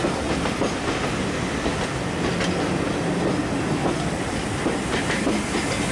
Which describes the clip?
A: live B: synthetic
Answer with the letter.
A